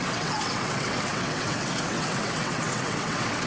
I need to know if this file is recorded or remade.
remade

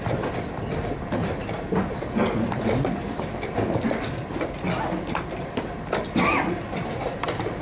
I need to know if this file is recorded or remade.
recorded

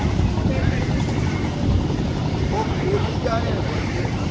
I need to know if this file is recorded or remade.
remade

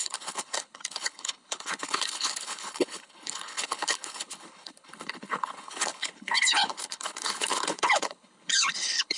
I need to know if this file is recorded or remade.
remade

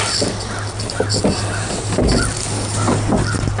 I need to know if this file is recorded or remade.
recorded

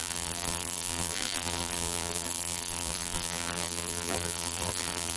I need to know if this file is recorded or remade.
remade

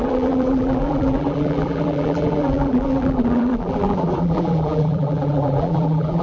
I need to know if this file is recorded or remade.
remade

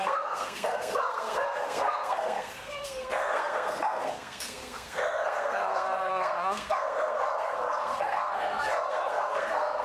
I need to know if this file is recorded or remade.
remade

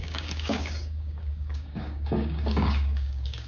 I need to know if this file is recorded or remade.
remade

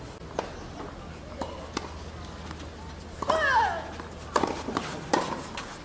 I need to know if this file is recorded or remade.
recorded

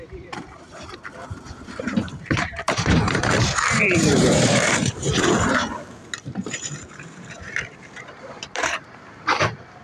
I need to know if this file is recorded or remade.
remade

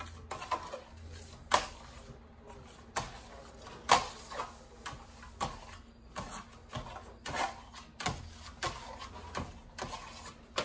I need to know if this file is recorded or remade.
recorded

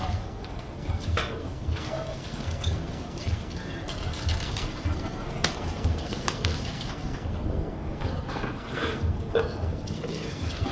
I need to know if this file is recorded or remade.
remade